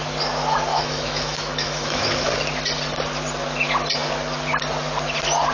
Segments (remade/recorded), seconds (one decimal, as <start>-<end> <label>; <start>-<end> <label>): 0.0-0.7 recorded; 0.7-2.3 remade; 2.3-5.5 recorded